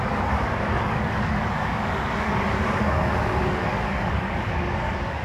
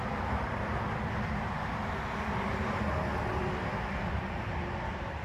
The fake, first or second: first